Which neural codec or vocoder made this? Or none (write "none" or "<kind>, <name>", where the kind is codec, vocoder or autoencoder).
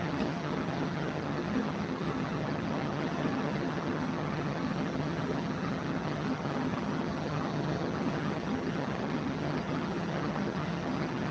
vocoder, HiFi-GAN